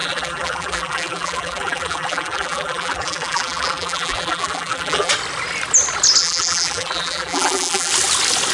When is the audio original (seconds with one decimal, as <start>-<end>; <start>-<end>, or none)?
5.1-6.2; 7.9-8.5